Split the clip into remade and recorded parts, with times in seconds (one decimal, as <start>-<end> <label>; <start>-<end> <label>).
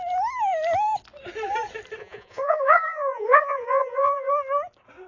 0.0-2.0 recorded; 2.0-4.3 remade; 4.3-5.1 recorded